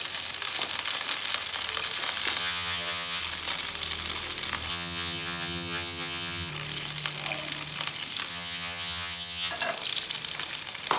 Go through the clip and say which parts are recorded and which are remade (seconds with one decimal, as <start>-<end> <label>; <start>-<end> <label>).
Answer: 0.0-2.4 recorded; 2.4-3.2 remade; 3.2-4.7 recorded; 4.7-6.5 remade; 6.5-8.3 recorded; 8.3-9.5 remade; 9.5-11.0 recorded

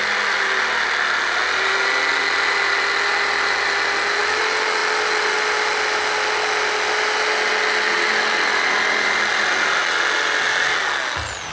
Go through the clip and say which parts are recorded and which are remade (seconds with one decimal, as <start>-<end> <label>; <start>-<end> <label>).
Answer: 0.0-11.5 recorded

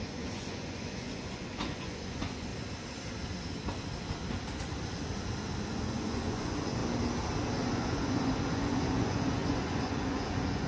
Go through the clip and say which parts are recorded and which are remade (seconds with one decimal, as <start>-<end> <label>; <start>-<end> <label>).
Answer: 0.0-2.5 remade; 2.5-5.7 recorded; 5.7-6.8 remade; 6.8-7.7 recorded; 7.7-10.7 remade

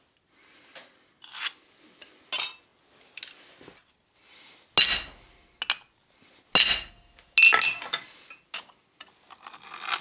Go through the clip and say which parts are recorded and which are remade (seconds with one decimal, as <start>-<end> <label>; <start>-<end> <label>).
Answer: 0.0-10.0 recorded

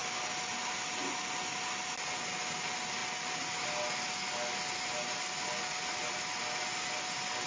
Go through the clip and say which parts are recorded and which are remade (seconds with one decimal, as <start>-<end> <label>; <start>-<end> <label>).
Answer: 0.0-7.5 recorded